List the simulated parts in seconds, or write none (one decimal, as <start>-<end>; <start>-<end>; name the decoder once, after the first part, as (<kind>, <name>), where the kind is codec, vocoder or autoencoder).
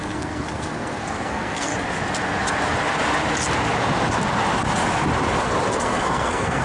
0.0-1.7 (codec, SNAC); 5.7-6.6